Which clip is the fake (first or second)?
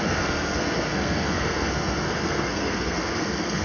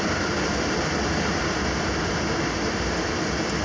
first